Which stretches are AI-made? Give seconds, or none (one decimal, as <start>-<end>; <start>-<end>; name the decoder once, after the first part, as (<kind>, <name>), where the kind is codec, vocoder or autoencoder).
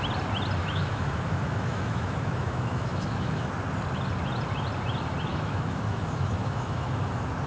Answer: 0.6-3.5 (autoencoder, DAC-VAE); 5.3-7.1